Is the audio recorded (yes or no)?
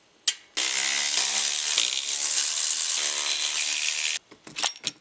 yes